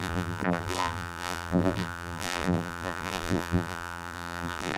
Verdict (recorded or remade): remade